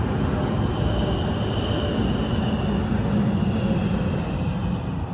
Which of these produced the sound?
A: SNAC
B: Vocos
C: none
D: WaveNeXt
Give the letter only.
C